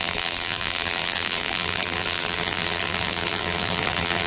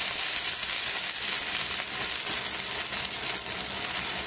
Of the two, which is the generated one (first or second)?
first